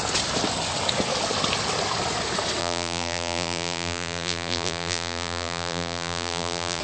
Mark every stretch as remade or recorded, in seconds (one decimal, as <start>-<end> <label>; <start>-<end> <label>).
0.0-2.6 recorded; 2.6-6.8 remade